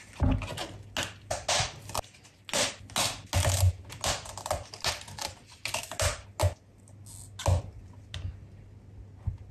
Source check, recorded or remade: recorded